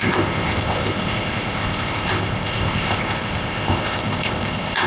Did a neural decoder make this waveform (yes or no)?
yes